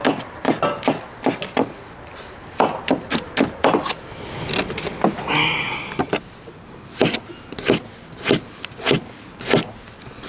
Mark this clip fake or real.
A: real